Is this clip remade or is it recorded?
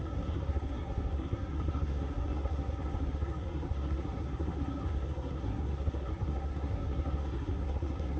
remade